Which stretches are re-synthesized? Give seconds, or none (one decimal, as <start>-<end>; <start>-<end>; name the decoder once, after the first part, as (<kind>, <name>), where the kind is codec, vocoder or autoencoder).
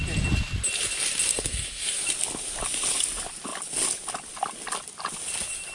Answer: 1.3-2.0 (codec, SNAC)